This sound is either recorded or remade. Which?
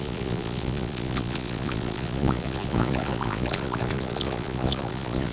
remade